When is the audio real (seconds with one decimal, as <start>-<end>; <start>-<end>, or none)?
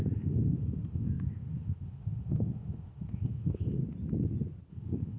3.8-4.7